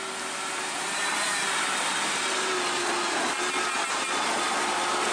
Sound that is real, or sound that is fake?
real